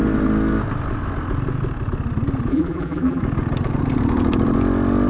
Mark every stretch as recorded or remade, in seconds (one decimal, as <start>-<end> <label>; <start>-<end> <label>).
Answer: 0.0-2.5 recorded; 2.5-3.2 remade; 3.2-5.1 recorded